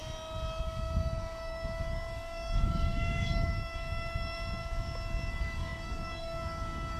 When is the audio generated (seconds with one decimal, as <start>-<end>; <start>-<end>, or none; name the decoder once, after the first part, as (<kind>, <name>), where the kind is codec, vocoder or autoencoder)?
0.6-4.6 (codec, DAC); 5.3-7.0